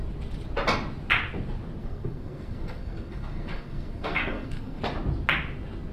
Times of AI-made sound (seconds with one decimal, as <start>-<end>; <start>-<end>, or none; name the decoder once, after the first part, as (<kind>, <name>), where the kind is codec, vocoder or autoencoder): 1.8-4.8 (codec, SNAC)